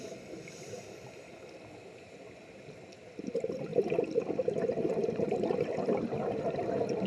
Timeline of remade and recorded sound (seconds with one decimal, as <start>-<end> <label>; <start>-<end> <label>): 0.0-7.1 remade